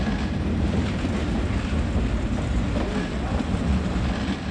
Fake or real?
real